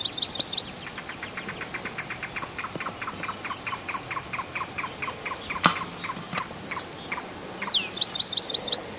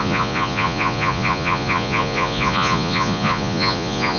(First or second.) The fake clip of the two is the second